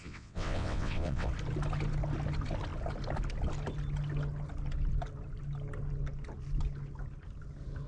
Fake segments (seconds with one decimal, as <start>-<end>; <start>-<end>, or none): 0.0-1.3